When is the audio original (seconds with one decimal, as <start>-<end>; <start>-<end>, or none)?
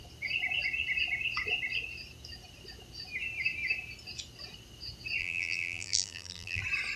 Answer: 0.0-5.2; 6.6-7.0